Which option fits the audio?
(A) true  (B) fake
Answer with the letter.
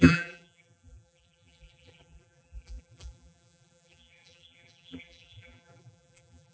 B